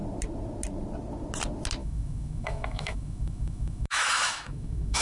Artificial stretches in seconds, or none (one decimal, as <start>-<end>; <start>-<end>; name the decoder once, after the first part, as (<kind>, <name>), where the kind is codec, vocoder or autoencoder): 1.8-5.0 (autoencoder, DAC-VAE)